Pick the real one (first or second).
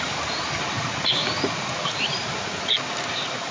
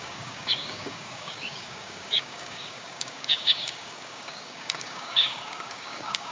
first